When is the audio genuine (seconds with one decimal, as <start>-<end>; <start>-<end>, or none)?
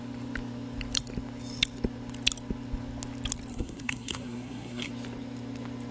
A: 0.0-3.5; 4.9-5.9